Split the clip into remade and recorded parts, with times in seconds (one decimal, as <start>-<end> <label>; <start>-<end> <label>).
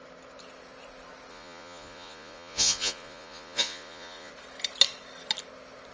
0.0-1.3 recorded; 1.3-4.3 remade; 4.3-5.9 recorded